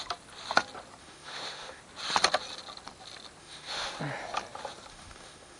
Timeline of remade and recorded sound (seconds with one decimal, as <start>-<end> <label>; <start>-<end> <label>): 0.0-1.0 recorded; 1.0-1.8 remade; 1.8-3.4 recorded; 3.4-3.9 remade; 3.9-4.9 recorded; 4.9-5.6 remade